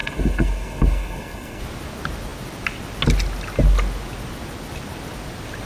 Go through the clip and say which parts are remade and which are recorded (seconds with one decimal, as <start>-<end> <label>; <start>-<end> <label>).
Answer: 0.0-1.6 remade; 1.6-5.7 recorded